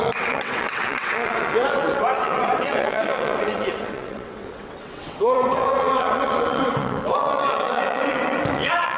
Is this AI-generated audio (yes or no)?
yes